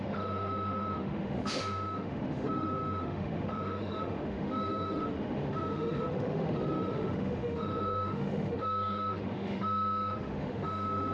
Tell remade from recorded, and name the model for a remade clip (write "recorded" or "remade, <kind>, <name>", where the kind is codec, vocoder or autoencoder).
remade, autoencoder, DAC-VAE